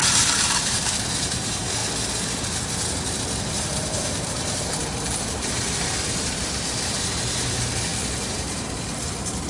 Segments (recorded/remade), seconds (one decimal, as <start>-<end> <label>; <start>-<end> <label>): 0.0-1.8 remade; 1.8-3.4 recorded; 3.4-9.5 remade